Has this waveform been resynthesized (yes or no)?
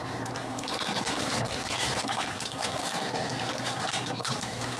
yes